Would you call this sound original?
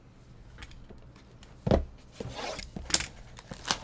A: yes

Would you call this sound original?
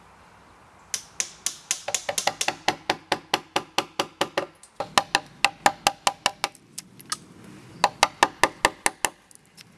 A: yes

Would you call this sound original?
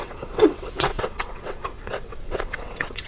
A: no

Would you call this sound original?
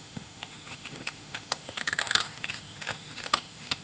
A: no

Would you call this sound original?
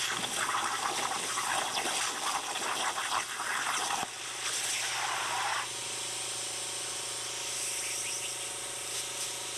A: yes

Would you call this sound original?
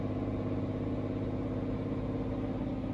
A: yes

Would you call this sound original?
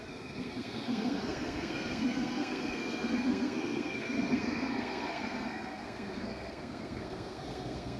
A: no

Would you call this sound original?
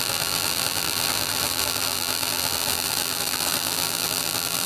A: no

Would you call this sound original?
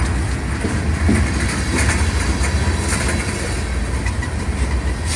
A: yes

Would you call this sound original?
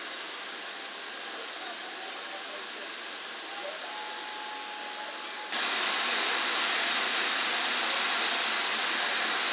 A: yes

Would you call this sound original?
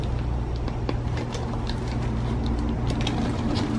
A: yes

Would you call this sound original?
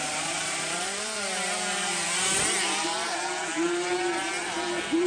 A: no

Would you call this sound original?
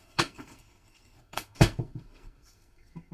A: no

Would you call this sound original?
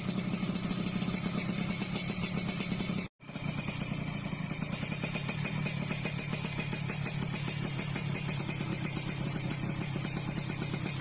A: yes